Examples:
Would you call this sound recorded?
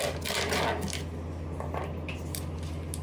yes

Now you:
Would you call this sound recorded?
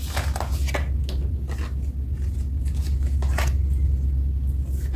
yes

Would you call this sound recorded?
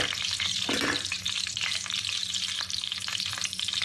yes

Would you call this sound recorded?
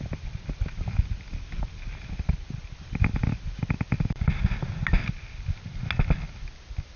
yes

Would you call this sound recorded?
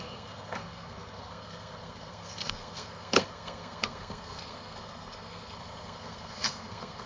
no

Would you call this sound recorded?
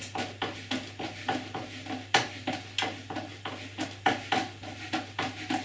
yes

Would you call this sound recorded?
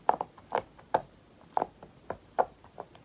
yes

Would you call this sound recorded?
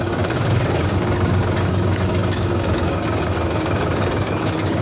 no